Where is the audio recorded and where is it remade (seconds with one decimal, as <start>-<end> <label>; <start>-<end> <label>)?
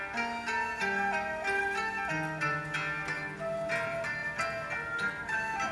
0.0-5.7 recorded